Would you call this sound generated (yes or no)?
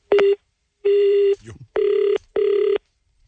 yes